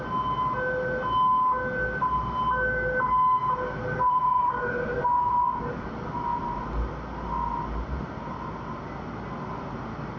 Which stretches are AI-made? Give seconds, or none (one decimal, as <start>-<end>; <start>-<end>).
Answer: none

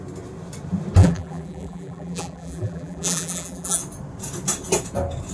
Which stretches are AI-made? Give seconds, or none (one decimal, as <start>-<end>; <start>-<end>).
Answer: 1.0-3.8